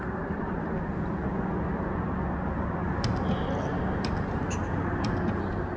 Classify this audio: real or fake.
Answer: real